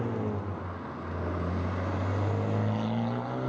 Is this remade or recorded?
recorded